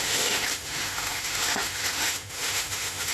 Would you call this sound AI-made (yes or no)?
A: yes